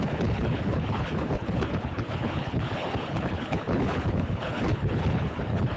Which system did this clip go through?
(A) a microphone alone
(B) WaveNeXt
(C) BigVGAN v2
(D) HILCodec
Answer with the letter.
D